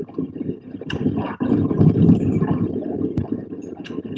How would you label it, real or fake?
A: fake